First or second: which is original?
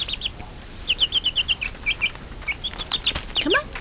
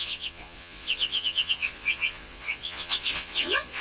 first